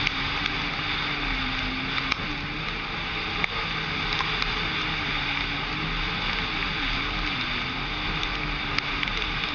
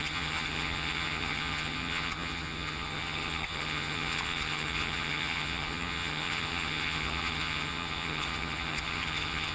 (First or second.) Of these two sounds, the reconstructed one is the second